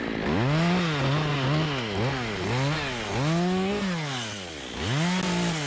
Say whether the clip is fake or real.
real